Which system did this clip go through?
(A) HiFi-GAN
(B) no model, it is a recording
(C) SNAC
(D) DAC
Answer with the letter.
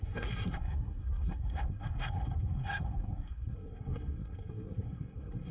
C